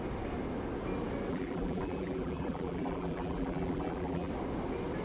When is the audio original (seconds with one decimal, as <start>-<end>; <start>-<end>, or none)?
0.0-1.3; 4.3-5.0